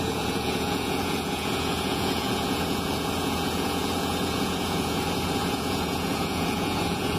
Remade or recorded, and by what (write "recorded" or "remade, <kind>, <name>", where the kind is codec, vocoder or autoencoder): remade, vocoder, Vocos